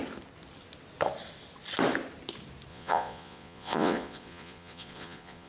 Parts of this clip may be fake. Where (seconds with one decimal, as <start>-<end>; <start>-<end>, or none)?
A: 2.7-5.5